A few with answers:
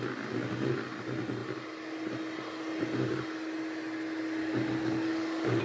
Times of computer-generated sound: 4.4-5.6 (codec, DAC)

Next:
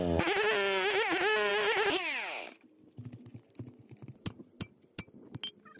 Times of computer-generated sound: none

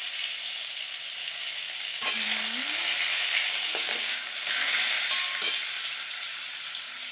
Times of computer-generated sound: 1.2-2.1 (codec, DAC); 3.1-5.5

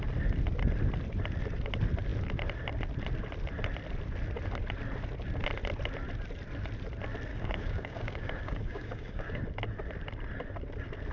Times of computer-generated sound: 7.3-9.4 (codec, DAC)

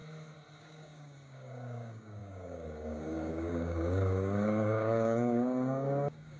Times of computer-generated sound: 0.6-6.4 (codec, DAC)

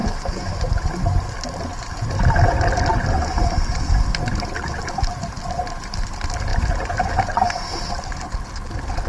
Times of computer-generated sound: none

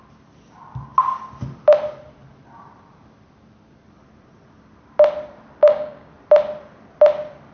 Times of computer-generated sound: 5.6-6.1 (codec, DAC)